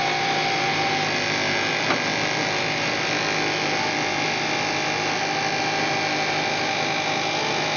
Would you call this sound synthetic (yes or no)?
no